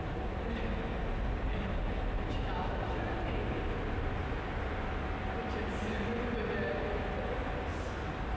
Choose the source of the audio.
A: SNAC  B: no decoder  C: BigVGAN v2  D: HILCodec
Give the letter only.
B